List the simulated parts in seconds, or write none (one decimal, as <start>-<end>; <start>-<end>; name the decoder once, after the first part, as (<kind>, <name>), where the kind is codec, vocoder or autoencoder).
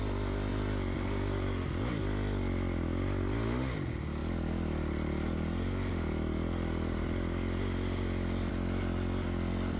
none